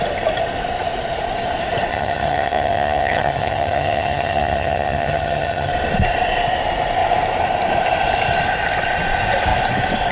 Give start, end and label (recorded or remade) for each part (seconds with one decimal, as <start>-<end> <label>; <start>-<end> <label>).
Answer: 0.0-1.9 recorded; 1.9-5.7 remade; 5.7-10.1 recorded